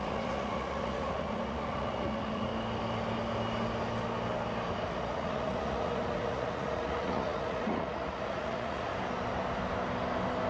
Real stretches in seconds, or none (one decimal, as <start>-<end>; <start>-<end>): 2.5-4.9; 8.9-10.5